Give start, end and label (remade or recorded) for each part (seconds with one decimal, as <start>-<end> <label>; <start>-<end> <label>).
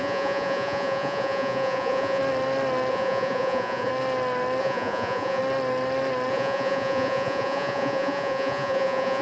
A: 0.0-2.2 remade; 2.2-2.9 recorded; 2.9-3.9 remade; 3.9-4.6 recorded; 4.6-5.4 remade; 5.4-6.3 recorded; 6.3-9.2 remade